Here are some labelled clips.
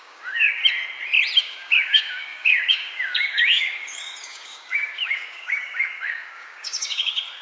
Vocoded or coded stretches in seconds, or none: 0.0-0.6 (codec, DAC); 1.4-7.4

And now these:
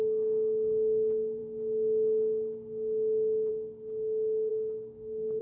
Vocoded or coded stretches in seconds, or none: 4.5-5.4 (codec, DAC)

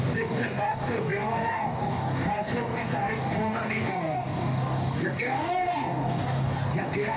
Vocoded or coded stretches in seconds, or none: 0.0-7.2 (codec, DAC)

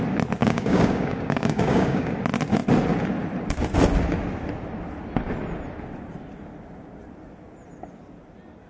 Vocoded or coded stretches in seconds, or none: 0.4-2.1 (codec, DAC)